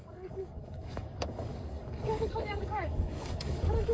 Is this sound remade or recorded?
remade